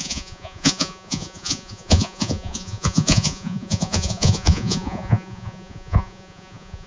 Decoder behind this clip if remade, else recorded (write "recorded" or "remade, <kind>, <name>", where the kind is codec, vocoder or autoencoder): remade, vocoder, Vocos